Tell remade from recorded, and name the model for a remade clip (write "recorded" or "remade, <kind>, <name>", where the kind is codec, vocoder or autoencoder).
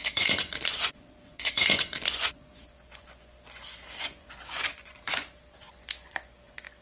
remade, vocoder, Vocos